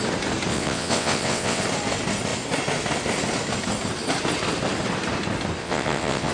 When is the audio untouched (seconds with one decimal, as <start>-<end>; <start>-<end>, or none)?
0.0-0.5; 1.6-5.6